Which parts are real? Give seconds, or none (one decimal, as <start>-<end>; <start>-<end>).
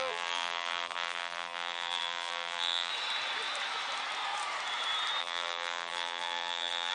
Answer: 2.9-5.2